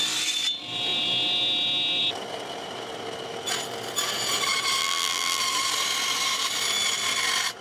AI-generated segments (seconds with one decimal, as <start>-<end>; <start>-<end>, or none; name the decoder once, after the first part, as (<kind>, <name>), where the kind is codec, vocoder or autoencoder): 4.8-5.4 (vocoder, BigVGAN v2)